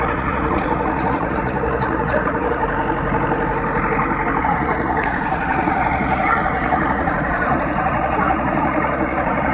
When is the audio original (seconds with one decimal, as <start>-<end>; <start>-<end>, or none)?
2.6-4.4